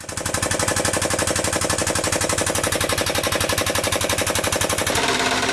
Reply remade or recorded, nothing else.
recorded